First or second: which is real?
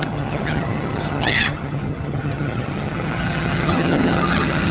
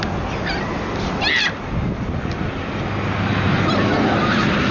second